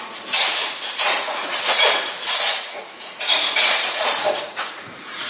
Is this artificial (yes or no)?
yes